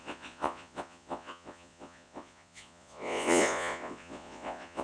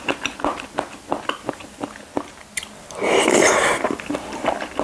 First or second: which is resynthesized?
first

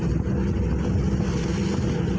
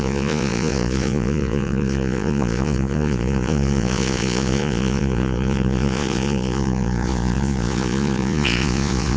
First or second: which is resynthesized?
second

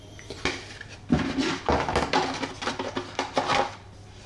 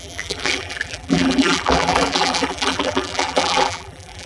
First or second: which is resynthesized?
second